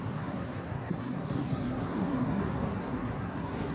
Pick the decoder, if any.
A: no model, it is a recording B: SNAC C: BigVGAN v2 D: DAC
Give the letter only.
B